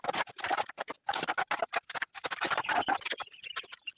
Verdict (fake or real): real